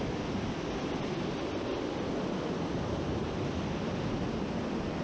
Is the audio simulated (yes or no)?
no